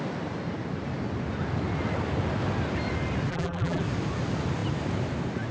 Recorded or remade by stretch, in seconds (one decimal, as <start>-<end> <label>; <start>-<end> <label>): 0.0-3.3 recorded; 3.3-3.8 remade; 3.8-5.5 recorded